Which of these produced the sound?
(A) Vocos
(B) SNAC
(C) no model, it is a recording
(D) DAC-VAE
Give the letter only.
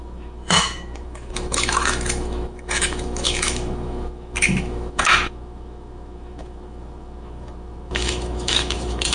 D